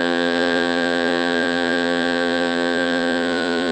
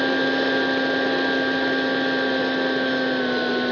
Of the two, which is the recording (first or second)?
second